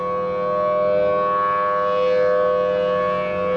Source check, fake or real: real